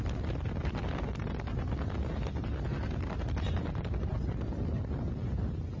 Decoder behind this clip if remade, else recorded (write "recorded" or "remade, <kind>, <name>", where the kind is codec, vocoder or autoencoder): recorded